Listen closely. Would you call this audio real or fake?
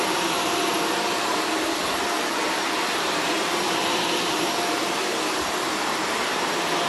fake